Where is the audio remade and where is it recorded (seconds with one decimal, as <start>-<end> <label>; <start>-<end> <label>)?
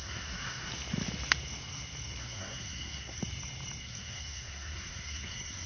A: 0.0-0.7 remade; 0.7-2.2 recorded; 2.2-3.2 remade; 3.2-3.8 recorded; 3.8-5.7 remade